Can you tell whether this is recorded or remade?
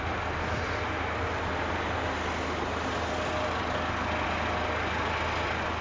recorded